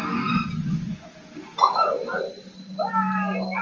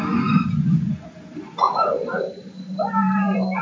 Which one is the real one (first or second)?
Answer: first